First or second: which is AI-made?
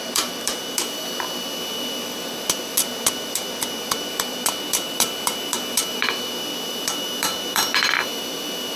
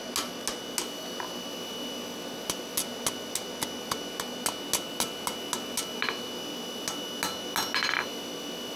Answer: first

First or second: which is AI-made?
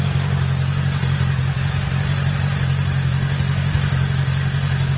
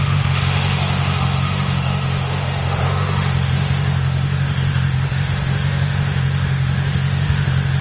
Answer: second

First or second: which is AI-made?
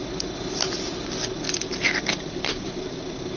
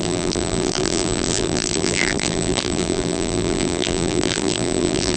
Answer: second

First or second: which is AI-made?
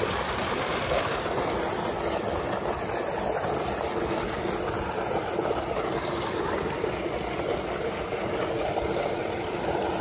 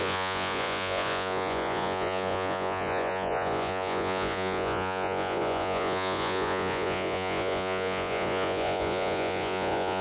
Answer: second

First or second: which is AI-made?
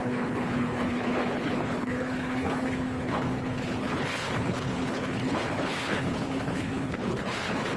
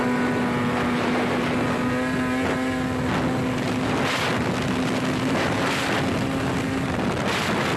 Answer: first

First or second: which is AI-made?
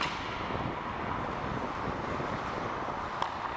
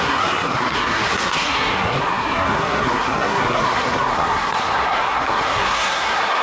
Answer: second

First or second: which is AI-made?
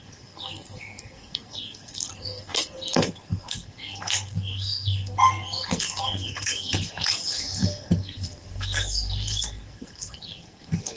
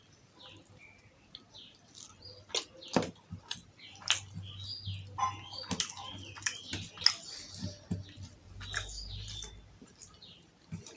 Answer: first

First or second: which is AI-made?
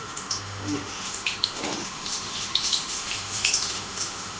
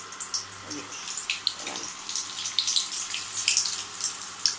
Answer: first